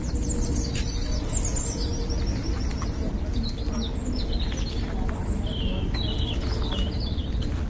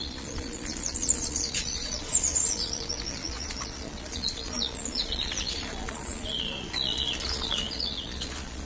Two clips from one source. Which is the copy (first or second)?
second